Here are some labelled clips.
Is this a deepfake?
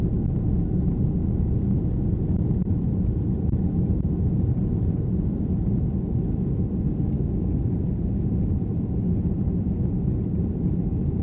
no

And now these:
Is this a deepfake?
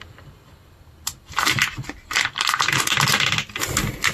no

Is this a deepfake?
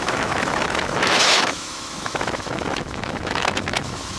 yes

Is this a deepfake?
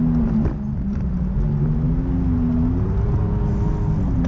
no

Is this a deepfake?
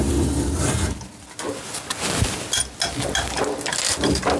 no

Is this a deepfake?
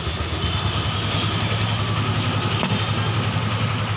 no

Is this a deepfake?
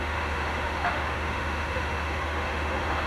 yes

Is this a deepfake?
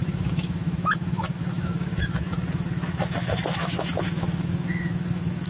yes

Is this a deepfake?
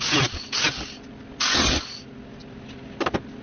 no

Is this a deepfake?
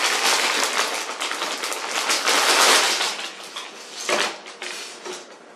no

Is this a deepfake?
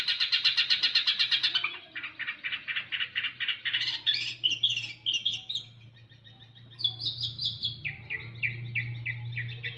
no